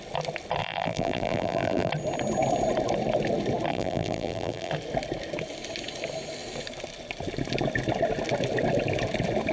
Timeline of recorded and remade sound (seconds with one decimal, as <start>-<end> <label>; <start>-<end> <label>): 0.0-0.6 recorded; 0.6-1.9 remade; 1.9-3.7 recorded; 3.7-4.7 remade; 4.7-9.5 recorded